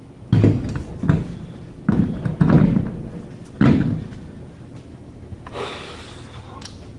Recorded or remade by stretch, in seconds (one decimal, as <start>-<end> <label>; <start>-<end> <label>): 0.0-4.9 recorded; 4.9-6.0 remade; 6.0-7.0 recorded